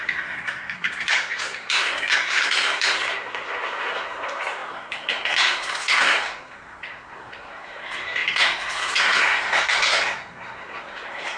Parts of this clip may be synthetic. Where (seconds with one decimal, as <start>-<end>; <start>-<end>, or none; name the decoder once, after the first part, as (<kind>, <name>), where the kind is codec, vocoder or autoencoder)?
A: 0.0-11.4 (codec, SNAC)